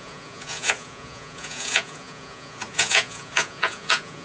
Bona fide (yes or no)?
no